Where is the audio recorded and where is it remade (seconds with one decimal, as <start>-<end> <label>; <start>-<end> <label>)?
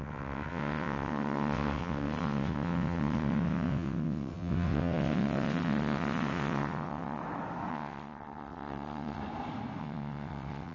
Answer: 0.0-7.2 remade; 7.2-7.7 recorded; 7.7-9.2 remade; 9.2-9.8 recorded; 9.8-10.7 remade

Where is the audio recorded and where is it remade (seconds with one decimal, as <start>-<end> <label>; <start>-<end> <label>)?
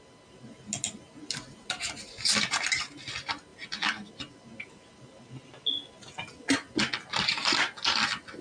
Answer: 0.0-8.4 recorded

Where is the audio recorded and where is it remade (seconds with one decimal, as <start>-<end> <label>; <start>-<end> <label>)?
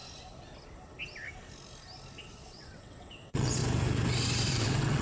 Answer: 0.0-2.2 recorded; 2.2-3.6 remade; 3.6-4.5 recorded; 4.5-5.0 remade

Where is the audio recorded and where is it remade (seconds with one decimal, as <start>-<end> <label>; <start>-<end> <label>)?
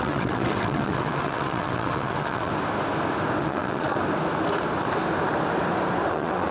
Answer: 0.0-2.5 remade; 2.5-3.4 recorded; 3.4-4.0 remade; 4.0-6.1 recorded; 6.1-6.5 remade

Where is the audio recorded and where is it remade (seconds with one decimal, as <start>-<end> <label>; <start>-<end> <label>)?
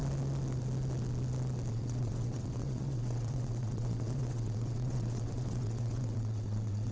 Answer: 0.0-1.7 recorded; 1.7-6.9 remade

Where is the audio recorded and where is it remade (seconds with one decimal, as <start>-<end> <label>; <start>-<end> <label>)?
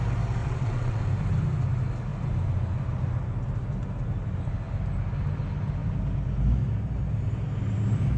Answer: 0.0-0.4 recorded; 0.4-1.0 remade; 1.0-8.2 recorded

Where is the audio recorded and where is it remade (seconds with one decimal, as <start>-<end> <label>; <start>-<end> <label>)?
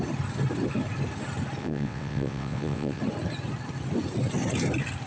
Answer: 0.0-1.6 recorded; 1.6-3.0 remade; 3.0-5.1 recorded